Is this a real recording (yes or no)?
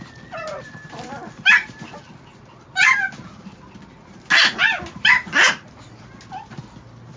yes